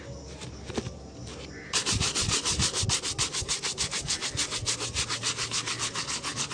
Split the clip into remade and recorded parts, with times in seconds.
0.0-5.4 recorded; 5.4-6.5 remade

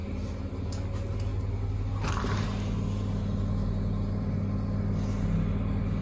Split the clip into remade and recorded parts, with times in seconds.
0.0-0.5 remade; 0.5-6.0 recorded

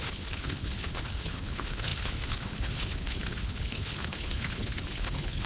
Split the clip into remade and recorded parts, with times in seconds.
0.0-5.5 remade